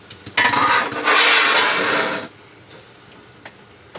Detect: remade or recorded recorded